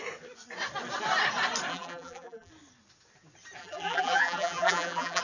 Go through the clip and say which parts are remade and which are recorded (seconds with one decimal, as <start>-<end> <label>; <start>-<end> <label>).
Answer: 0.0-1.7 recorded; 1.7-2.5 remade; 2.5-3.6 recorded; 3.6-5.2 remade

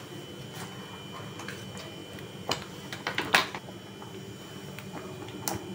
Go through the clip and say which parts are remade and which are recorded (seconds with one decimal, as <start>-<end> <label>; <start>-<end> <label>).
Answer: 0.0-5.7 recorded

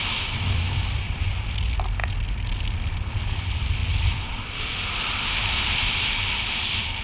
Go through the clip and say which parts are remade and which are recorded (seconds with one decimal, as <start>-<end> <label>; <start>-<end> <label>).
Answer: 0.0-7.0 recorded